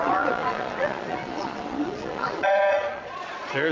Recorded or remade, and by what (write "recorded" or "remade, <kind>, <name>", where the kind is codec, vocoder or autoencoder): remade, vocoder, Vocos